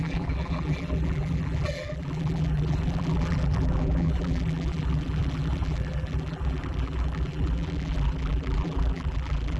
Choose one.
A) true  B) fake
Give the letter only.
B